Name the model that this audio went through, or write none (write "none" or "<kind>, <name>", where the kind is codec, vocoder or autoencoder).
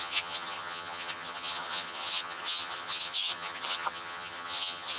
vocoder, HiFi-GAN